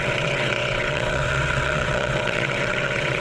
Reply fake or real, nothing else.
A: fake